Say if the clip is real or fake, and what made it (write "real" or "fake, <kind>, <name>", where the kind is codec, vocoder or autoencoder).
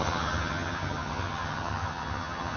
fake, vocoder, HiFi-GAN